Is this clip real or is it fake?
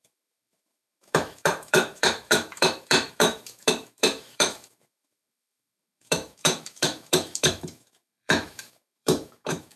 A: fake